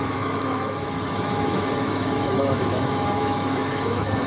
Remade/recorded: remade